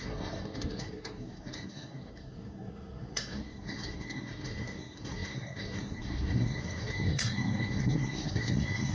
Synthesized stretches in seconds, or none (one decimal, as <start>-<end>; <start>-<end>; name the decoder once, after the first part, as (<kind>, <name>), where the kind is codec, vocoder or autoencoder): 0.0-8.9 (codec, SNAC)